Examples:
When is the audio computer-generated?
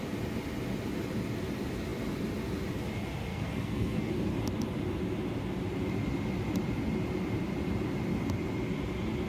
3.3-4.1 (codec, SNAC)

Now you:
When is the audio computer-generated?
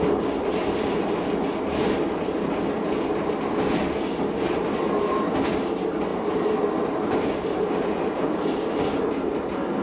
none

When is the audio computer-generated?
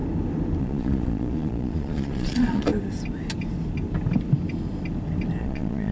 0.6-2.7 (vocoder, Vocos); 5.4-5.9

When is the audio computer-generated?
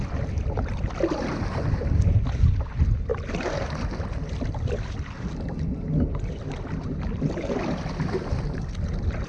none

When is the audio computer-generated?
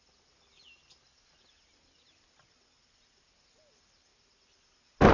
none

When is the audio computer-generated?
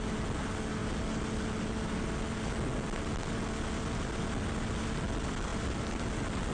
none